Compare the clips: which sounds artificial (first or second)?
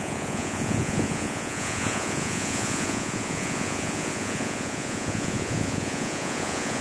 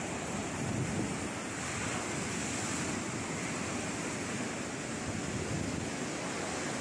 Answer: first